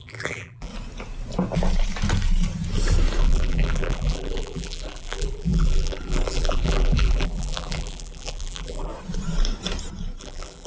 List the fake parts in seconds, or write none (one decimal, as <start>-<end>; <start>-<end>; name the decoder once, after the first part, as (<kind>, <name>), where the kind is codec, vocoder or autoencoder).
0.0-0.7 (vocoder, BigVGAN v2); 3.2-8.9; 10.2-10.7